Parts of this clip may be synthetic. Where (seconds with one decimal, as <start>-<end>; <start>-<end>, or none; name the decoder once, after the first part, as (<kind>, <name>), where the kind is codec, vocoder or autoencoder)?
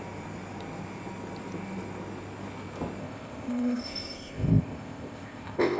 3.0-5.8 (codec, ZipCodec)